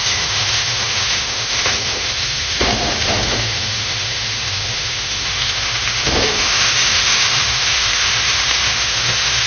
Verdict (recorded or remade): remade